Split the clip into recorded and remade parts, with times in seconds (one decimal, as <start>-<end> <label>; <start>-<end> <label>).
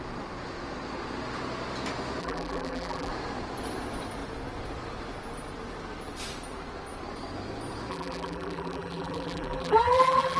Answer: 0.0-2.2 recorded; 2.2-3.1 remade; 3.1-7.9 recorded; 7.9-10.4 remade